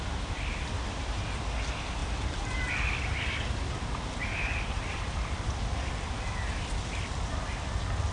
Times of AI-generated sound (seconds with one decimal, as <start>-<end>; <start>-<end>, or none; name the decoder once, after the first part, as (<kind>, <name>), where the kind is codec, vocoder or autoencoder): none